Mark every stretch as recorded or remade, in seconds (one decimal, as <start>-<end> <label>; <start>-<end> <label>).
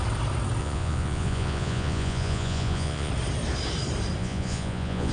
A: 0.0-0.6 recorded; 0.6-3.1 remade; 3.1-4.2 recorded; 4.2-5.1 remade